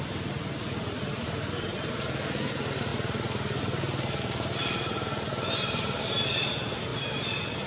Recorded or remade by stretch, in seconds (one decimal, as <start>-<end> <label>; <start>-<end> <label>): 0.0-7.7 recorded

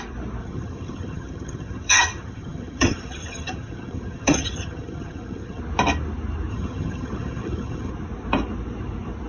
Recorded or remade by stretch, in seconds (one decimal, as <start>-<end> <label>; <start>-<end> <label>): 0.0-0.4 recorded; 0.4-5.6 remade; 5.6-6.5 recorded; 6.5-7.9 remade; 7.9-9.3 recorded

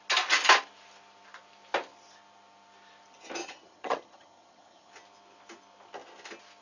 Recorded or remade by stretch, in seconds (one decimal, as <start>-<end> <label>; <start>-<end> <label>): 0.0-3.4 recorded; 3.4-4.9 remade; 4.9-6.6 recorded

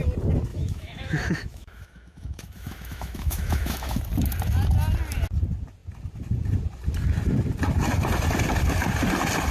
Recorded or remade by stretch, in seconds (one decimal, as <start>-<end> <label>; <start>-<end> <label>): 0.0-0.5 recorded; 0.5-4.0 remade; 4.0-9.5 recorded

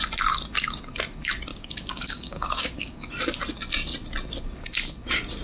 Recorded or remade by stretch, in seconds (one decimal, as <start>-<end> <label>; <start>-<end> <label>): 0.0-1.5 recorded; 1.5-3.1 remade; 3.1-5.4 recorded